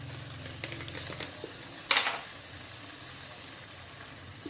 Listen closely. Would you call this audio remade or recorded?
recorded